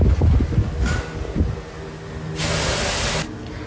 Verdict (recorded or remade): recorded